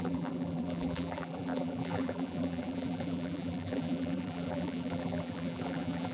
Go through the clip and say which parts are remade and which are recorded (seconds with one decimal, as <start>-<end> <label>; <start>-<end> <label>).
0.0-6.1 remade